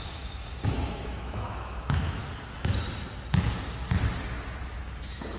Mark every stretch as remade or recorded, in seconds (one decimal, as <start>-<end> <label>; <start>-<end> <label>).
0.0-2.2 remade; 2.2-4.6 recorded; 4.6-5.4 remade